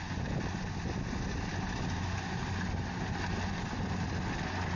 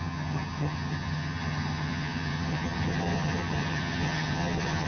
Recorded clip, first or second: first